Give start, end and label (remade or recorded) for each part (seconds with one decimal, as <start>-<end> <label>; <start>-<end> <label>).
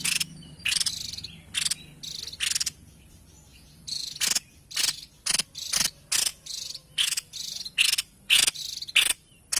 0.0-3.5 recorded; 3.5-4.2 remade; 4.2-6.3 recorded; 6.3-8.6 remade; 8.6-9.6 recorded